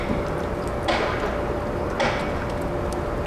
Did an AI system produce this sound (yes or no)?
no